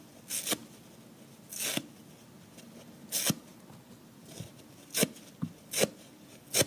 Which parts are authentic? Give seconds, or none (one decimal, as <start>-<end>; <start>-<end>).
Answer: 0.0-6.7